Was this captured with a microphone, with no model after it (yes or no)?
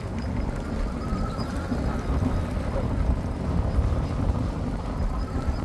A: yes